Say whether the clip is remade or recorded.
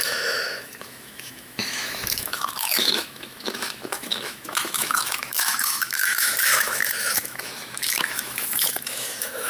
remade